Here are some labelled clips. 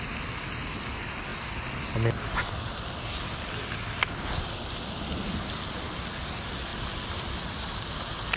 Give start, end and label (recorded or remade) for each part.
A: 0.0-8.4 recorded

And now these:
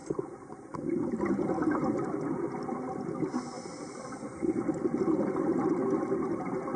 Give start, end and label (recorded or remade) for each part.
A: 0.0-6.8 recorded

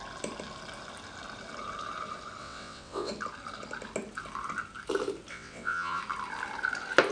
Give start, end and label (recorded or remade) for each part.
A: 0.0-2.4 recorded; 2.4-3.1 remade; 3.1-5.3 recorded; 5.3-6.0 remade; 6.0-7.1 recorded

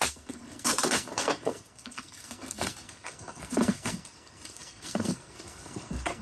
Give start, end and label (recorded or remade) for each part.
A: 0.0-6.2 remade

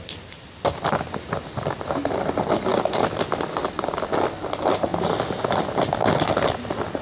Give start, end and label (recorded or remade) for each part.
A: 0.0-2.7 remade; 2.7-4.4 recorded; 4.4-7.0 remade

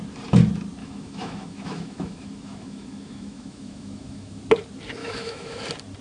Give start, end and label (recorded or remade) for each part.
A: 0.0-0.8 recorded; 0.8-4.4 remade; 4.4-5.0 recorded; 5.0-5.6 remade; 5.6-6.0 recorded